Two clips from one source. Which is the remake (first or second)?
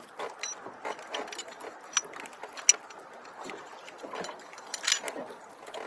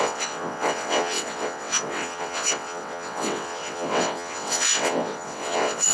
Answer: second